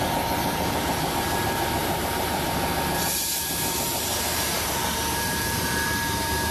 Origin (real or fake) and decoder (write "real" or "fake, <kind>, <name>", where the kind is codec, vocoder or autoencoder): fake, vocoder, BigVGAN v2